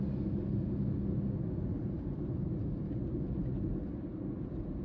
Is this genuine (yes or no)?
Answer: yes